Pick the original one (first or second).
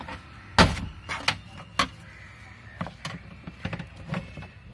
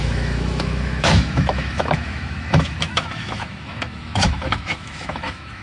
first